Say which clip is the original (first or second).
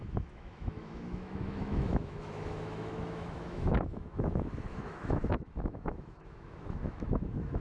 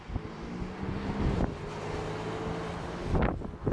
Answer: second